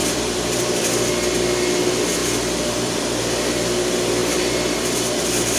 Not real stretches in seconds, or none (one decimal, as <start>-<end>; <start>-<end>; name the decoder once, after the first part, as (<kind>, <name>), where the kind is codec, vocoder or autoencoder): 0.0-1.1 (vocoder, BigVGAN v2); 2.2-3.2; 4.2-5.6